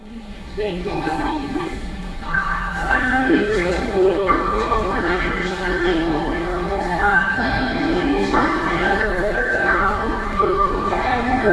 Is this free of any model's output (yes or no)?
no